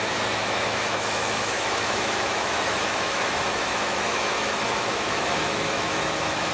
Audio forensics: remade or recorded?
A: remade